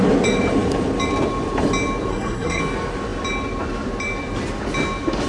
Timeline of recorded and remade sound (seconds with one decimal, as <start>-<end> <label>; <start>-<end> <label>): 0.0-2.1 recorded; 2.1-2.6 remade; 2.6-5.3 recorded

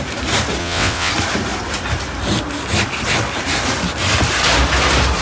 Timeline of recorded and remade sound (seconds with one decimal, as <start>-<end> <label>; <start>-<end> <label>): 0.0-0.6 recorded; 0.6-1.1 remade; 1.1-5.2 recorded

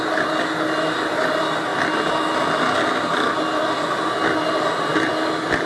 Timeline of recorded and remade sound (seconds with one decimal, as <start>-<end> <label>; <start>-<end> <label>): 0.0-5.7 recorded

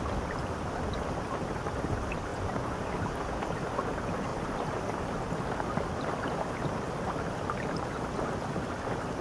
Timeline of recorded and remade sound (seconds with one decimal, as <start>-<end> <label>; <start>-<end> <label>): 0.0-2.3 recorded; 2.3-2.8 remade; 2.8-9.2 recorded